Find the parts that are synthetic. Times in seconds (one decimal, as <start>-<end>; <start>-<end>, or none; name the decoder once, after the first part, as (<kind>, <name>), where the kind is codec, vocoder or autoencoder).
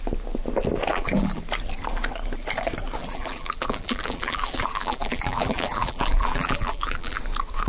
0.9-1.4 (vocoder, BigVGAN v2); 3.0-7.2